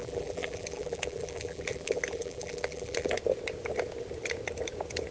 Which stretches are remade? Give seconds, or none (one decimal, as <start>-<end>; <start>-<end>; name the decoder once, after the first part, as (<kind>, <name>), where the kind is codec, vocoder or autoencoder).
0.0-3.1 (vocoder, BigVGAN v2)